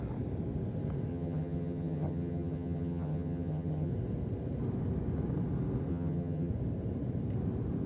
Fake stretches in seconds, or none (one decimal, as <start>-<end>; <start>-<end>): 1.1-3.9; 5.9-6.5